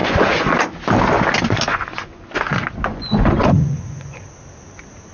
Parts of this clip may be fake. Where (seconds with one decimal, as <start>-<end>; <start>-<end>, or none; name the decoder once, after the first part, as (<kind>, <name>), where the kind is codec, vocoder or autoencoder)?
0.0-0.5 (vocoder, Vocos); 1.7-2.3; 2.9-4.2